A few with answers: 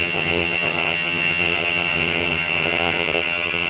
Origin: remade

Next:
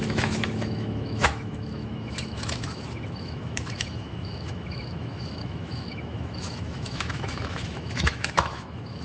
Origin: remade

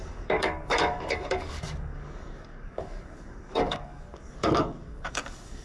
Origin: remade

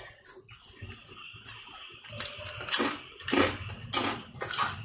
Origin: recorded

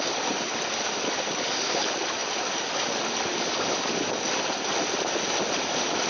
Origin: recorded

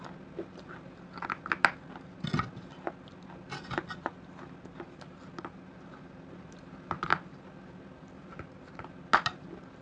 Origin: recorded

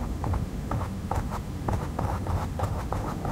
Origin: remade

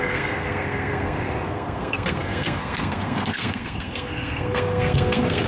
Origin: remade